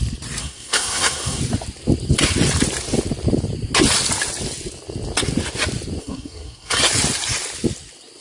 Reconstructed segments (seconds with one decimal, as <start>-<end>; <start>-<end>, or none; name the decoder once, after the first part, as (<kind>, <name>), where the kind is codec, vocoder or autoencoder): 0.4-1.4 (codec, SNAC); 6.0-6.8